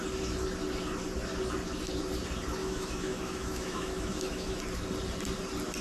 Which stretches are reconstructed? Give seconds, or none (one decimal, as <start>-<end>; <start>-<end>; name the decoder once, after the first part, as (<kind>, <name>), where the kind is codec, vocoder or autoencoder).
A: 2.6-4.6 (autoencoder, DAC-VAE)